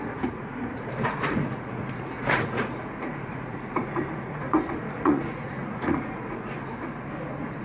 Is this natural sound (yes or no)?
no